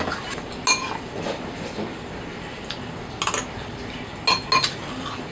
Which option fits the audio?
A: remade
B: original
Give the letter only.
B